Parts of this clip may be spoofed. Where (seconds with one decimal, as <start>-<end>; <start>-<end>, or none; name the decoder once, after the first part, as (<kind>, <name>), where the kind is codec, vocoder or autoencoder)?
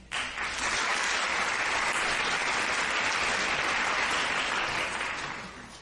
none